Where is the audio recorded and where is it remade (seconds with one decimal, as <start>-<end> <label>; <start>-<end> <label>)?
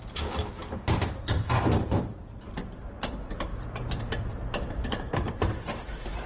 0.0-0.4 remade; 0.4-1.2 recorded; 1.2-6.3 remade